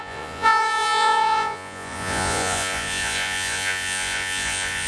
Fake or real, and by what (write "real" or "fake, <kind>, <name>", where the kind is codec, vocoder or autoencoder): fake, vocoder, Vocos